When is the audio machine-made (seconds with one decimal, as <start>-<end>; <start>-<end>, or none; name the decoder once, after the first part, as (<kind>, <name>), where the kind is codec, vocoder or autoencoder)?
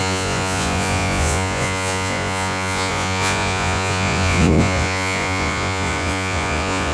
0.0-6.9 (vocoder, Vocos)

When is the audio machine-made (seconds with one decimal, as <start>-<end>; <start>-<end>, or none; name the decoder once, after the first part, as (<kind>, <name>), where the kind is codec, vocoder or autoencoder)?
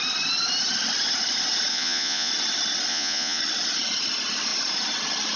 1.7-2.3 (vocoder, Vocos); 2.9-3.4